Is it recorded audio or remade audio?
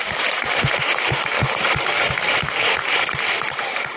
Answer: recorded